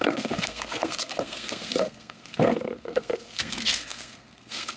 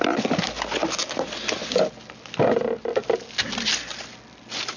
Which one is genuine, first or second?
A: second